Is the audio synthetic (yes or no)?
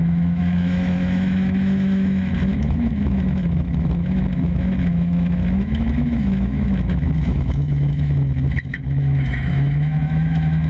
yes